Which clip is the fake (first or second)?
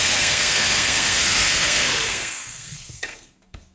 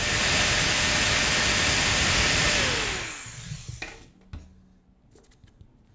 first